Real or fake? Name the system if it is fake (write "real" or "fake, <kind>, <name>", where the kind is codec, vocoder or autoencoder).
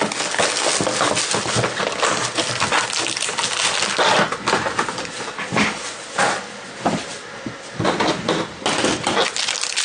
real